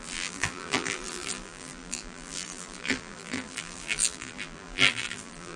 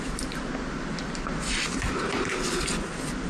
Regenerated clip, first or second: first